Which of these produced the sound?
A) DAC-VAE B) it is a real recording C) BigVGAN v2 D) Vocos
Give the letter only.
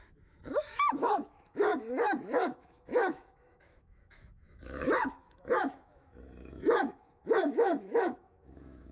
A